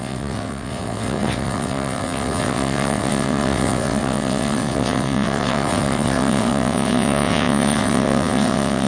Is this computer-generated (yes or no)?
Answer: yes